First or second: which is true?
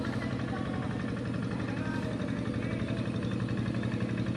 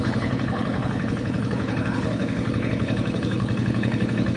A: first